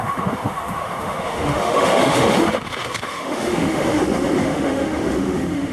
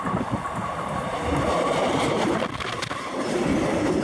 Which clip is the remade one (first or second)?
first